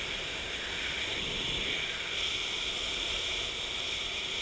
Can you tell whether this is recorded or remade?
recorded